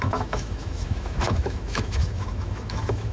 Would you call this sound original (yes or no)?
no